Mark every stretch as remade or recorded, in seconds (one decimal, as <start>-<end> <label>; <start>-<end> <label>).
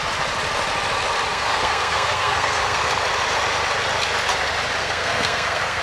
0.0-1.3 recorded; 1.3-2.9 remade; 2.9-4.8 recorded; 4.8-5.8 remade